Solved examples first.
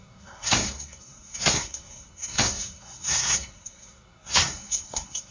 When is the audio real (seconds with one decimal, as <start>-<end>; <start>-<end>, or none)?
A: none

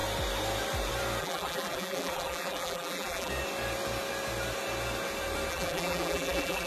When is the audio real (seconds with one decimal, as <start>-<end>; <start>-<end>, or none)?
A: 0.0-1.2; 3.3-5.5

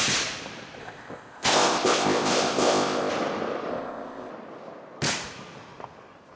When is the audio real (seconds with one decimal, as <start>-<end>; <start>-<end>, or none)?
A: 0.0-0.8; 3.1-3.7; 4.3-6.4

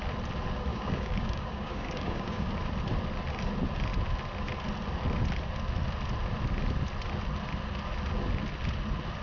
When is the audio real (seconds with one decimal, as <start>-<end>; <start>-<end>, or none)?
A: 0.0-0.7; 2.5-9.2

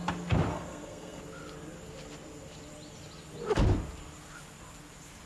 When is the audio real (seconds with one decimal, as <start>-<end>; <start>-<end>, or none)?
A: 0.0-0.5; 1.2-5.3

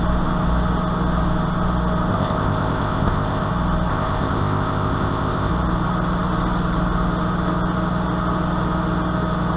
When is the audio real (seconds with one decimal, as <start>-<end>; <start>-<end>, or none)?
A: 0.0-2.1; 3.5-3.9; 5.5-9.6